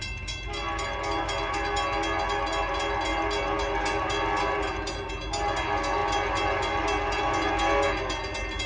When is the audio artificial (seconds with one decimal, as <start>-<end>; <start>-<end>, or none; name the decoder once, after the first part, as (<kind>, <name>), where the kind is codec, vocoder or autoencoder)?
none